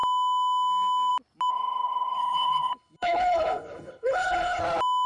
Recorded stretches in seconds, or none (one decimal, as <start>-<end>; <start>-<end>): 0.0-1.5; 4.6-5.1